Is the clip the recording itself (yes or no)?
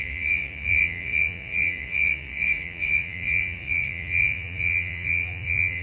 no